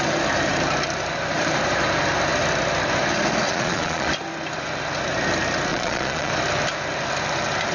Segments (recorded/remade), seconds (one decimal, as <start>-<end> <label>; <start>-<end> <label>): 0.0-3.5 recorded; 3.5-4.1 remade; 4.1-5.7 recorded; 5.7-6.3 remade; 6.3-7.7 recorded